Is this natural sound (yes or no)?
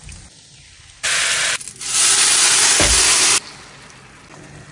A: yes